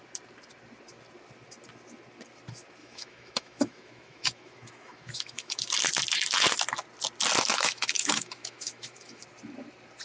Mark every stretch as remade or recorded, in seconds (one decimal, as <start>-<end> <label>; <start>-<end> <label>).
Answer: 0.0-2.8 recorded; 2.8-5.7 remade; 5.7-7.5 recorded; 7.5-9.2 remade; 9.2-10.0 recorded